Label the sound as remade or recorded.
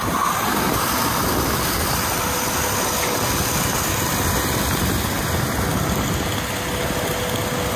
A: recorded